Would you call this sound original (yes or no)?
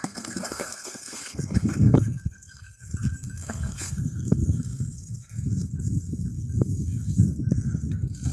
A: no